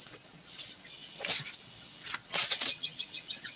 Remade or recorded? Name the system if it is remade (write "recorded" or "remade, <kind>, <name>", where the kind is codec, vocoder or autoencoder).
remade, vocoder, WaveNeXt